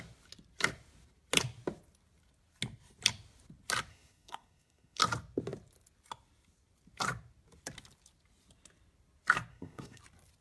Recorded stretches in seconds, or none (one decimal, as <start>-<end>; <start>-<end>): 0.0-3.9; 5.0-9.5; 10.0-10.4